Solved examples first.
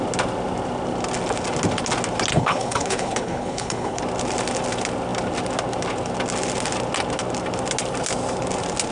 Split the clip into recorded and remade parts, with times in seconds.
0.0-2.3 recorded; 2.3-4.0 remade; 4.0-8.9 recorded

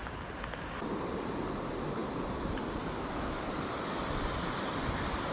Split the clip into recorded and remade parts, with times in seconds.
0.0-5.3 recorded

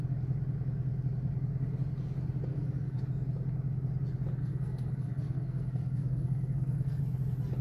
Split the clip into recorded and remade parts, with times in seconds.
0.0-2.5 recorded; 2.5-3.0 remade; 3.0-4.4 recorded; 4.4-7.0 remade; 7.0-7.6 recorded

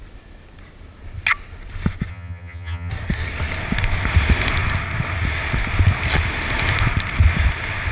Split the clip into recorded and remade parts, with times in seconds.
0.0-2.1 recorded; 2.1-2.9 remade; 2.9-7.9 recorded

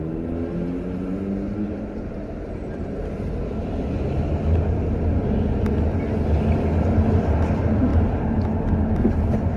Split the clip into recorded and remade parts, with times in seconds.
0.0-9.6 recorded